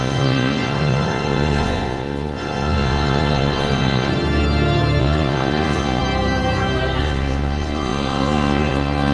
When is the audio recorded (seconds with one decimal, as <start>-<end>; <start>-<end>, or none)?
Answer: 4.1-5.0; 6.0-7.0